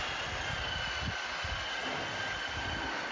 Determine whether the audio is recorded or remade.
recorded